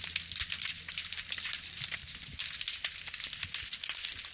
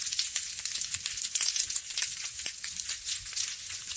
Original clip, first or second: first